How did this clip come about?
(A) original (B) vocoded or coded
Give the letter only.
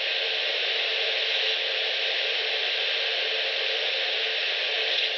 A